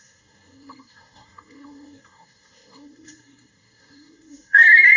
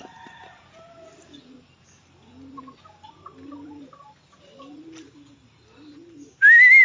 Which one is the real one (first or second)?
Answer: second